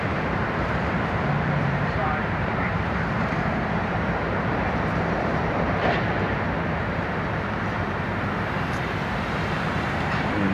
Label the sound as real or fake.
fake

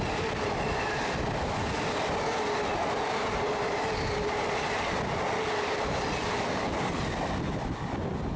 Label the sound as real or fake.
real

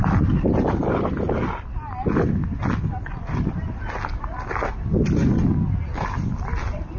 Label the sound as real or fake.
real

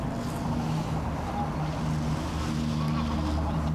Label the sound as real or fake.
real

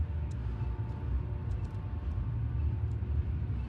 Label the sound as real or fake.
real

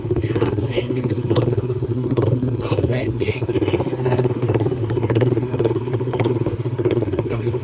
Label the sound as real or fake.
fake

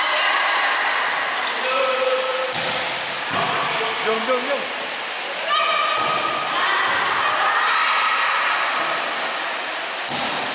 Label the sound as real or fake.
real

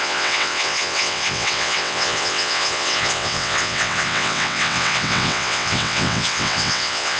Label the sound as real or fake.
fake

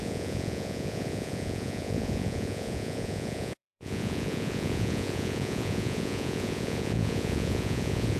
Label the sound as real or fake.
fake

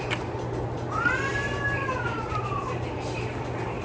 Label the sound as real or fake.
real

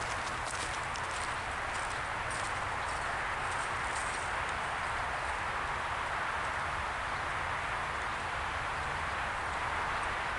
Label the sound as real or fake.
real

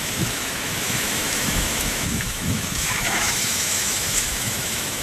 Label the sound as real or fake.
fake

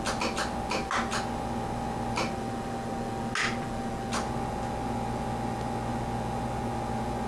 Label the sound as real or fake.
real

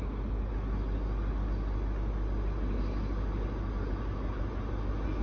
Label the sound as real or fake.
real